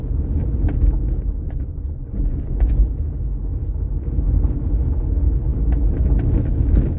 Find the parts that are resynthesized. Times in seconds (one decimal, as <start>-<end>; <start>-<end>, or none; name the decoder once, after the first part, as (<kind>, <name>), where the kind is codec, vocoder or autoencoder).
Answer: 1.4-2.7 (vocoder, Vocos)